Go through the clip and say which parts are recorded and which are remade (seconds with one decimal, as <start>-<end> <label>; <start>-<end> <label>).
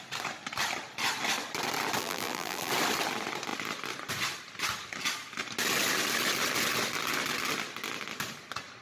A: 0.0-2.0 recorded; 2.0-2.7 remade; 2.7-8.8 recorded